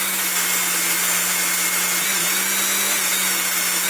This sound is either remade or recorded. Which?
recorded